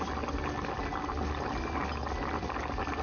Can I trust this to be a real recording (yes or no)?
yes